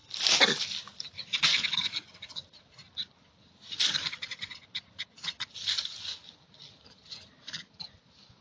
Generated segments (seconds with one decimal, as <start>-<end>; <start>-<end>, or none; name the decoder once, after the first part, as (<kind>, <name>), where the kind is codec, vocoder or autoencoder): none